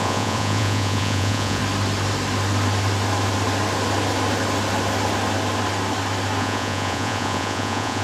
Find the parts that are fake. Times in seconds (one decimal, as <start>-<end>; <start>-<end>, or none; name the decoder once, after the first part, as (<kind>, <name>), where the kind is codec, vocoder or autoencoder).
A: 0.0-1.6 (vocoder, Vocos); 6.4-8.0